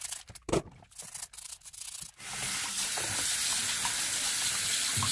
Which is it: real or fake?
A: real